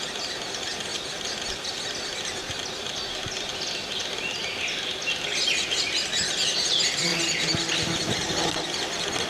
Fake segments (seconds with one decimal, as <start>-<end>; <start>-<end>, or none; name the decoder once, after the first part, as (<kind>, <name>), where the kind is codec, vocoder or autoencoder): none